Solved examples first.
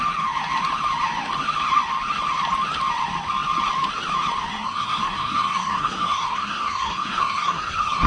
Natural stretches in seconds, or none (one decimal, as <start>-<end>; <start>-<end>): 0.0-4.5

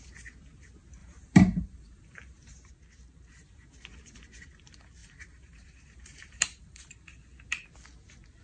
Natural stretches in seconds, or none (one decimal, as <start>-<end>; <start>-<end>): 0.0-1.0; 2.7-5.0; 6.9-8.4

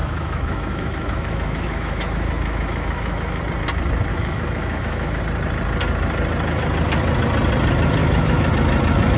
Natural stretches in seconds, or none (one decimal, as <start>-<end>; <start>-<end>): 3.4-4.1; 5.2-8.0; 8.5-9.2